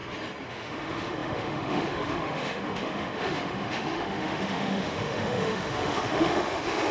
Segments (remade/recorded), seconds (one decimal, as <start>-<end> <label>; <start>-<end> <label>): 0.0-0.5 recorded; 0.5-6.9 remade